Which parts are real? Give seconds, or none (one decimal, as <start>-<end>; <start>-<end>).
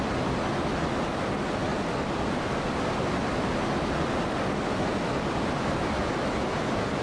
0.0-7.0